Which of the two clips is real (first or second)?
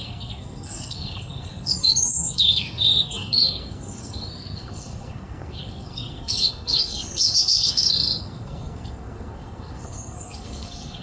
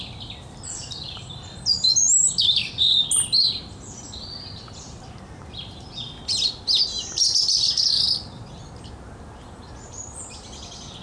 second